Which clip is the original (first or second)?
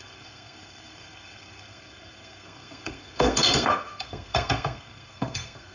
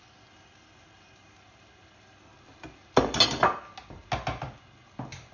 second